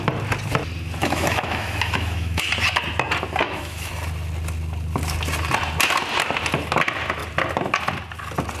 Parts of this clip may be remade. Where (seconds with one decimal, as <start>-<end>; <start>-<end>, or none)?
1.0-2.5; 3.4-3.9